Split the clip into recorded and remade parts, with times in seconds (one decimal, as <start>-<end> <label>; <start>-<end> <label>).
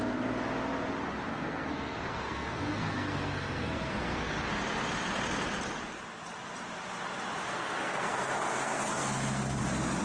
0.0-1.3 recorded; 1.3-4.5 remade; 4.5-7.4 recorded; 7.4-9.6 remade; 9.6-10.0 recorded